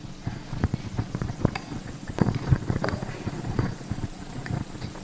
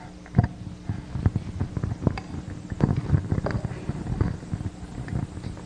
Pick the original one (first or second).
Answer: second